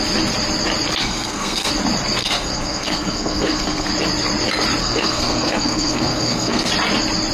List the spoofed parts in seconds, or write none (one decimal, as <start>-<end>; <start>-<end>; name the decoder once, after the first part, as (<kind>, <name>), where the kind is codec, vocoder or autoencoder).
1.0-1.7 (codec, SNAC); 2.2-3.9; 4.8-6.7

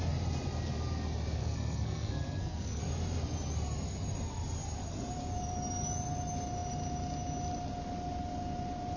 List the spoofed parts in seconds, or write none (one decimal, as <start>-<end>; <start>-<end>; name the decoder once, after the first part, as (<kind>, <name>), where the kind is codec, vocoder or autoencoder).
1.4-2.8 (codec, SNAC)